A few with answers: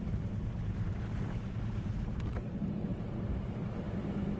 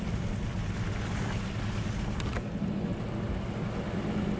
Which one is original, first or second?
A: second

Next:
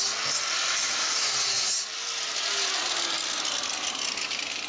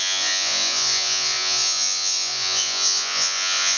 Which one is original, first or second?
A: first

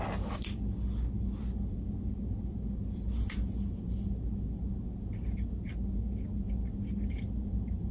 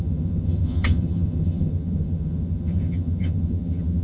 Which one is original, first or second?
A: first